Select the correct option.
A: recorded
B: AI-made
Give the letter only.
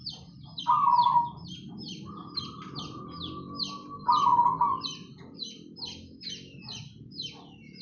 A